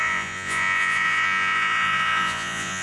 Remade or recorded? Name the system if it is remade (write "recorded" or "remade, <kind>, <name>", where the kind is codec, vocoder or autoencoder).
remade, vocoder, Vocos